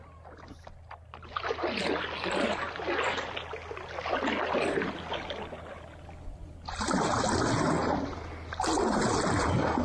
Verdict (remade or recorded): recorded